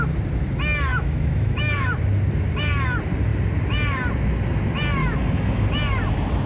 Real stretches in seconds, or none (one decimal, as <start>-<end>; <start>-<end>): 0.0-0.9; 1.9-5.0; 5.7-6.5